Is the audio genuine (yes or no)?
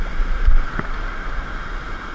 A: yes